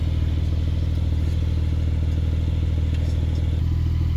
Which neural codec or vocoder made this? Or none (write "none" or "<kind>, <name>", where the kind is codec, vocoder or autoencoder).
none